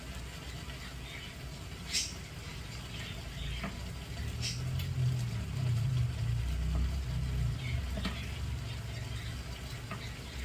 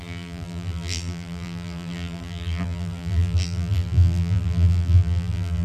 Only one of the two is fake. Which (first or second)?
second